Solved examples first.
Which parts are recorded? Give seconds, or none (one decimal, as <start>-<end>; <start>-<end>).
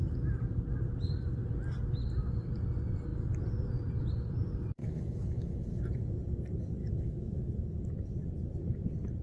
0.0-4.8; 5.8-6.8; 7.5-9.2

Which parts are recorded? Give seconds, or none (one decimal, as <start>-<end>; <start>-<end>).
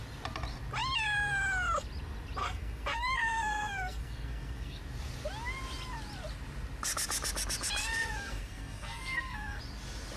0.0-2.4; 4.8-7.8; 9.6-10.2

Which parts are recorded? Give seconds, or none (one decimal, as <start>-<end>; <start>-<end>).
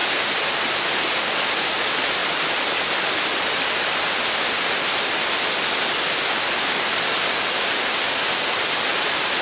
0.0-9.4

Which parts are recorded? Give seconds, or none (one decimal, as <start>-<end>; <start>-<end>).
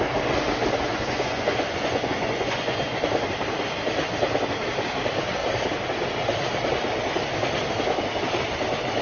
0.0-0.9; 3.0-9.0